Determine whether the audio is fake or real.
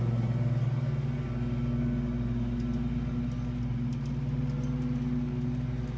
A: real